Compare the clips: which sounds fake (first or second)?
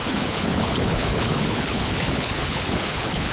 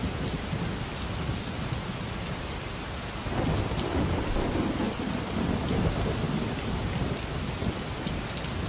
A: first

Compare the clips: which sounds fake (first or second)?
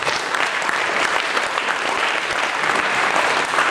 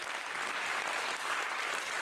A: first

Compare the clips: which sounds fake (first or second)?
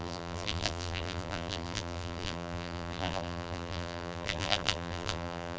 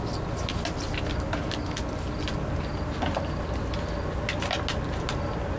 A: first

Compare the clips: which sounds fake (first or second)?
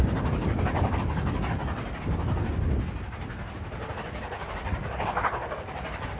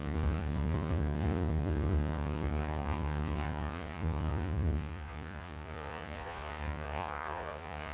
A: second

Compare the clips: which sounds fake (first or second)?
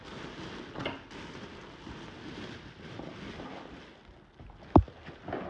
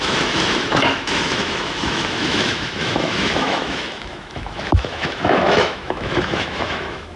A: second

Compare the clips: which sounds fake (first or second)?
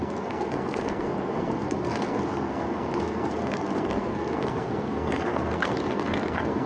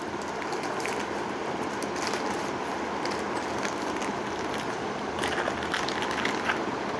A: first